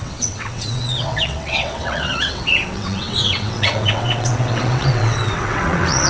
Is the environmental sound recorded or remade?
remade